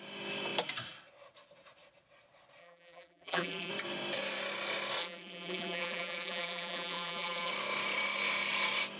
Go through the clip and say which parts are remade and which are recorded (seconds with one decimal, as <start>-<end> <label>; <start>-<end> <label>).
0.0-2.6 recorded; 2.6-3.7 remade; 3.7-5.0 recorded; 5.0-7.5 remade; 7.5-9.0 recorded